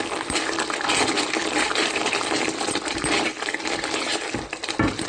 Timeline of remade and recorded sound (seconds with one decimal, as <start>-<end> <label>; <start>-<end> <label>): 0.0-1.4 recorded; 1.4-4.4 remade; 4.4-5.1 recorded